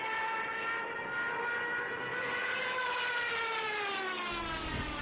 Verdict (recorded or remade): recorded